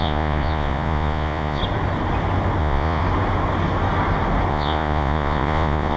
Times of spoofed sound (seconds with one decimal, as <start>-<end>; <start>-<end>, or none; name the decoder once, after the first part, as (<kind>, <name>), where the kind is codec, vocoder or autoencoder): 0.0-1.6 (vocoder, Vocos); 2.6-3.0; 4.5-6.0